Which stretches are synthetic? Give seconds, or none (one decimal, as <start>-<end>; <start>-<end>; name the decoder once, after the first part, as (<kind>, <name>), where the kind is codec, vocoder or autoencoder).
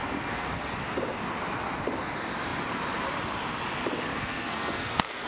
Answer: 0.0-0.7 (codec, SNAC); 4.1-5.3